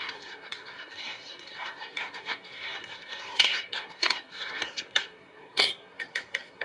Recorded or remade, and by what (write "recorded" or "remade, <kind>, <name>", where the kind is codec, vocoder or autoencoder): remade, codec, SNAC